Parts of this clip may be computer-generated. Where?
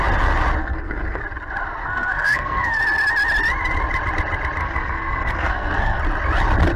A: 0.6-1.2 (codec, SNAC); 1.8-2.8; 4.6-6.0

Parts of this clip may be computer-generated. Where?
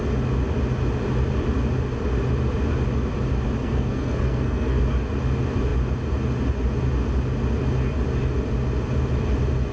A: 3.6-4.8 (codec, SNAC)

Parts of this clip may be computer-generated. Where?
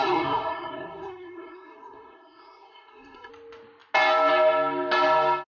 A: 0.0-3.3 (codec, SNAC)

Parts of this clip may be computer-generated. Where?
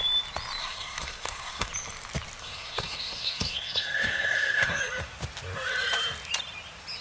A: 0.6-1.7 (codec, SNAC); 2.4-4.8